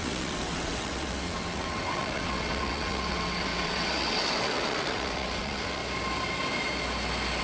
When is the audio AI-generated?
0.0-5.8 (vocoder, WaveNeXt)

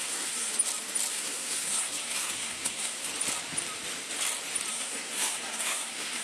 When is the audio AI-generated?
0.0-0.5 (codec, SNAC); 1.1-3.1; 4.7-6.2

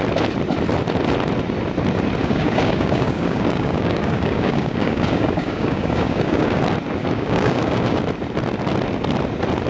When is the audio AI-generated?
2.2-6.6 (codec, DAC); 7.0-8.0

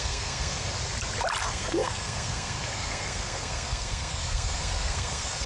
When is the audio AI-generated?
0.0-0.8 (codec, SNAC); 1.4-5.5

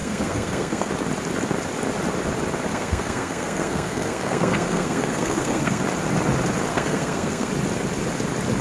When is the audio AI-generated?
0.0-0.9 (codec, SNAC); 2.7-5.8; 6.7-7.5

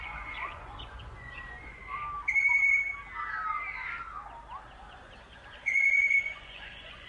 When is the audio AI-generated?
0.0-1.8 (vocoder, Vocos); 4.8-7.1

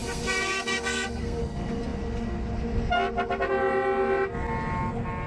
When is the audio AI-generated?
0.0-1.4 (codec, SNAC)